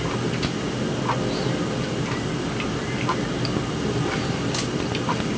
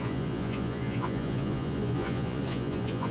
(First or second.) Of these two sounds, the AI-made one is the second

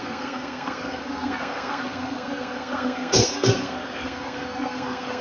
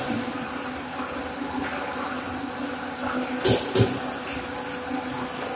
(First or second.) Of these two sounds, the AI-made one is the first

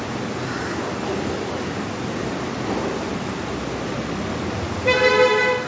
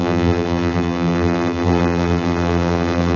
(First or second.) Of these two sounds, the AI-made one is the second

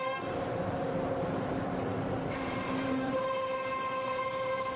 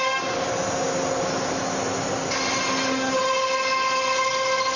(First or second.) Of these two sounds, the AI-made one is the first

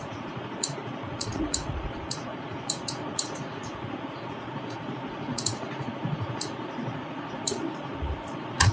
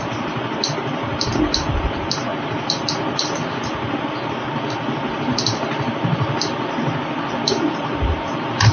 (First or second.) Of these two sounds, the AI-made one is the first